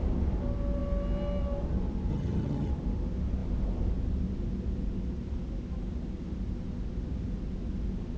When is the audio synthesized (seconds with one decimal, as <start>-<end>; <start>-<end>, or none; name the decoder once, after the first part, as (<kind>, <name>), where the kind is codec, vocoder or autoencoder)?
2.1-2.7 (vocoder, HiFi-GAN)